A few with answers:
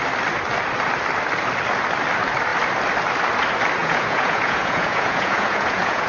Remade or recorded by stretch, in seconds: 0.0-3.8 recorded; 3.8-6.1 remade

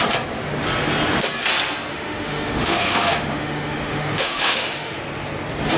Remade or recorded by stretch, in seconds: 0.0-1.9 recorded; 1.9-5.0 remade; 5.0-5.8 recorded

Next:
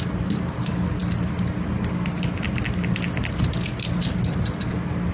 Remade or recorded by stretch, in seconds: 0.0-5.1 recorded